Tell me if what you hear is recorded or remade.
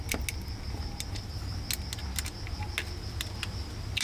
recorded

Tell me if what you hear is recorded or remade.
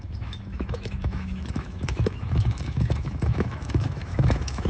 remade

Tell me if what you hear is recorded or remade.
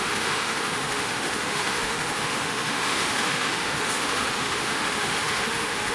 remade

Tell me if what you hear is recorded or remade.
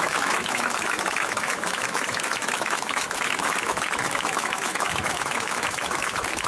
remade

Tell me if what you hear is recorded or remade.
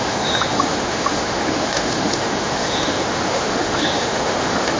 remade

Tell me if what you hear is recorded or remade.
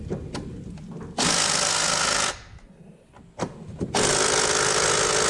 recorded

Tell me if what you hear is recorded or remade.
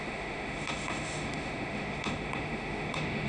remade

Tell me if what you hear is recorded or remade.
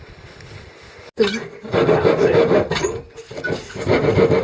recorded